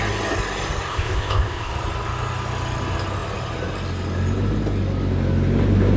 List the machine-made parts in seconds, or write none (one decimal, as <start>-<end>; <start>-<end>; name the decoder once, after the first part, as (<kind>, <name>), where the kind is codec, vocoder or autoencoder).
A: 0.9-1.7 (codec, ZipCodec)